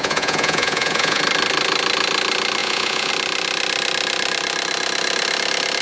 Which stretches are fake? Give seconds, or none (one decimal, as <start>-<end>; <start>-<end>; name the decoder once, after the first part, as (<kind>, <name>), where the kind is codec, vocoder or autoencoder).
0.0-1.2 (vocoder, Vocos); 2.6-3.1